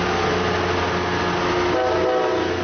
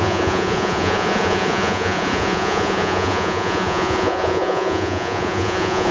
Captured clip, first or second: first